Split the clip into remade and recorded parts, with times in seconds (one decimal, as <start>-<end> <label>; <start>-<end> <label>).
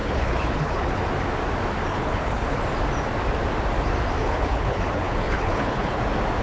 0.0-1.0 remade; 1.0-1.9 recorded; 1.9-2.6 remade; 2.6-4.2 recorded; 4.2-6.0 remade; 6.0-6.4 recorded